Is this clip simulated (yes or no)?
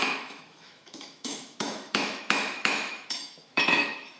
yes